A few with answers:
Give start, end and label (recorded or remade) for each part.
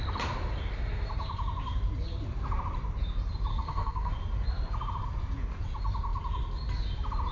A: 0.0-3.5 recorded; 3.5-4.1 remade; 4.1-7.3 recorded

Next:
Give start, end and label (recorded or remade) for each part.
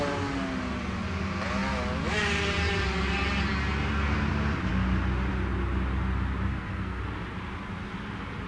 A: 0.0-6.5 recorded; 6.5-7.0 remade; 7.0-8.5 recorded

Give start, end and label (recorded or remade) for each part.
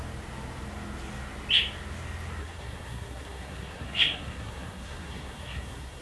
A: 0.0-2.4 recorded; 2.4-6.0 remade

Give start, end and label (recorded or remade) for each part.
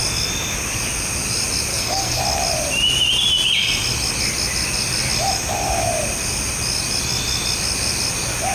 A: 0.0-1.7 recorded; 1.7-2.2 remade; 2.2-8.5 recorded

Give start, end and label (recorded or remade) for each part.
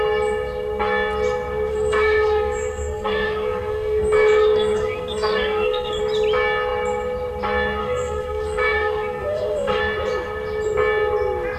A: 0.0-1.7 recorded; 1.7-6.0 remade; 6.0-7.8 recorded; 7.8-9.8 remade; 9.8-11.6 recorded